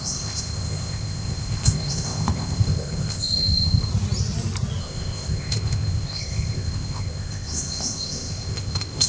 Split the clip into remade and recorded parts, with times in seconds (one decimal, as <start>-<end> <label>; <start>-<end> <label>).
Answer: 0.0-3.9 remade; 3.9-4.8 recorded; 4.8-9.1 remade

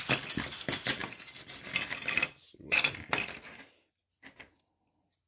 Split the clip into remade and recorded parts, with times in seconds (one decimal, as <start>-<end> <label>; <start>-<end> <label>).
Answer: 0.0-5.3 recorded

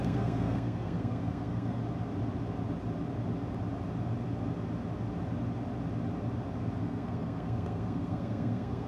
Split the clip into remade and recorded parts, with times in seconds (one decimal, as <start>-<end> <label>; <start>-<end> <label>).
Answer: 0.0-1.8 remade; 1.8-6.8 recorded; 6.8-8.9 remade

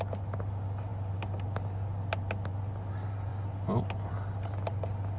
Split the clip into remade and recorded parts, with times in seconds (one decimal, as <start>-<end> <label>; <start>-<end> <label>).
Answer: 0.0-5.2 recorded